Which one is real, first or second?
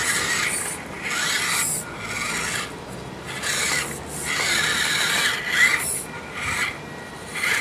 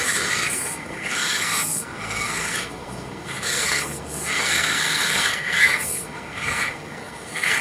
first